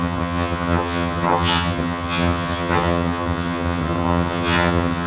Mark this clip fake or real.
fake